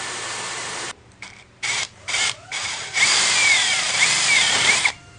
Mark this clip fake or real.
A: fake